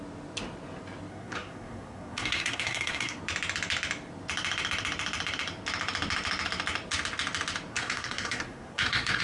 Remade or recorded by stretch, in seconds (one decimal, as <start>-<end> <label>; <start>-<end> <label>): 0.0-1.1 recorded; 1.1-3.2 remade; 3.2-7.7 recorded; 7.7-9.2 remade